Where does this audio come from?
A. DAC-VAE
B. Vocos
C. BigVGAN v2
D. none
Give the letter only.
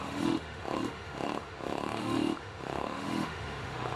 A